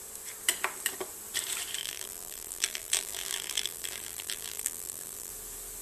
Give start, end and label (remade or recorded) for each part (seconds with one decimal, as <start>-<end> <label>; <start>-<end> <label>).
0.0-1.8 recorded; 1.8-5.3 remade; 5.3-5.8 recorded